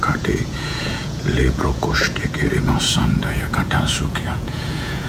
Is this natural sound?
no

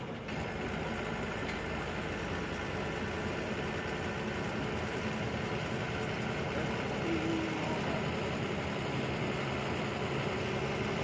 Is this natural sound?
yes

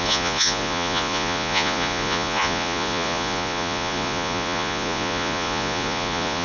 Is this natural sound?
no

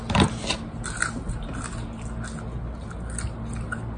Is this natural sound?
yes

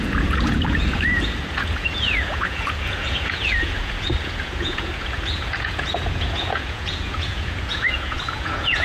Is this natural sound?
no